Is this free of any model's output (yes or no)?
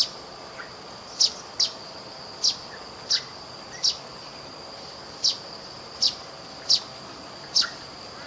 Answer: yes